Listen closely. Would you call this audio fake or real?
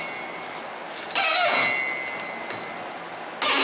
real